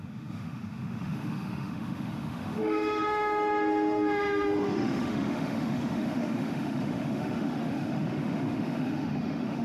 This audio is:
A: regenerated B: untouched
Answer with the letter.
A